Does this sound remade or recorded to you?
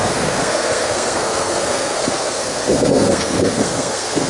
remade